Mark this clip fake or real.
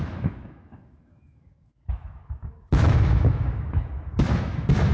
fake